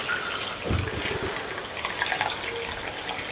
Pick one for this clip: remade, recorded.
recorded